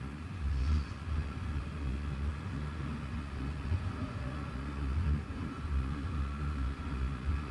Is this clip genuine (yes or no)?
no